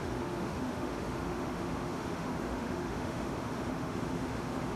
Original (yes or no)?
no